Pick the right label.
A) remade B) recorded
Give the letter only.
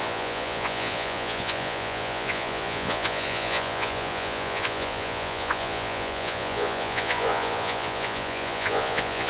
A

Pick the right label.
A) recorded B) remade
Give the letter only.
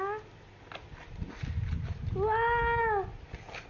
A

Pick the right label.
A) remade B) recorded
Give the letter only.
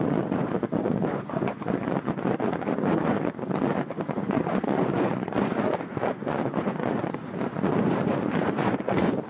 A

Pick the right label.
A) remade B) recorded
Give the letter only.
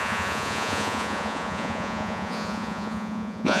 A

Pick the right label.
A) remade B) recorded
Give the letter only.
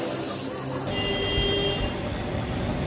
B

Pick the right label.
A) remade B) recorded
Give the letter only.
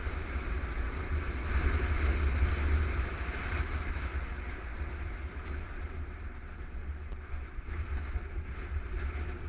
B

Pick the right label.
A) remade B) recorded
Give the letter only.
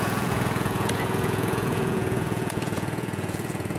A